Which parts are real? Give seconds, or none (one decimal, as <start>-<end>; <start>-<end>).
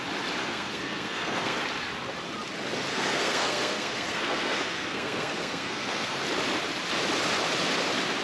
0.0-0.4; 1.6-2.9; 6.2-8.2